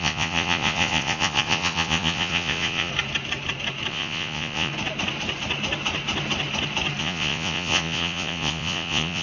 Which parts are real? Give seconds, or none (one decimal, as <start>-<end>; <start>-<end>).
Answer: 2.9-3.9; 4.7-7.0